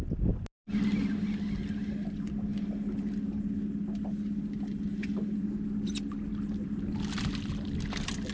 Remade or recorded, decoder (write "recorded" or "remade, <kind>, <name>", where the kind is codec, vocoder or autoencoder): recorded